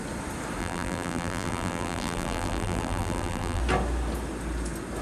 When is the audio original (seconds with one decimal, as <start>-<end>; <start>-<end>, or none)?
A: 0.0-0.6; 3.6-5.0